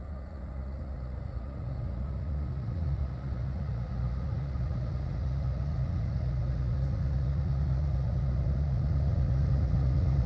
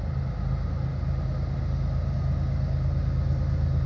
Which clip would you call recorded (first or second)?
second